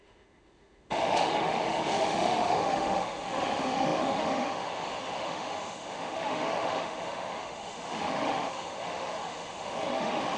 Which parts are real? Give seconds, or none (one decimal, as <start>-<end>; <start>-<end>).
none